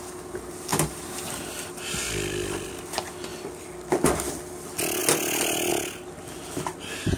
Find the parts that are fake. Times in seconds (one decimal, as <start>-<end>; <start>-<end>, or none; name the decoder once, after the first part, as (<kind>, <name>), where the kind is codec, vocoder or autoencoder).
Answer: 0.7-2.7 (vocoder, BigVGAN v2)